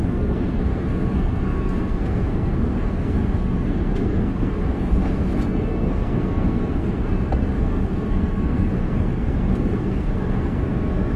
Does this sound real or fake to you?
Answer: fake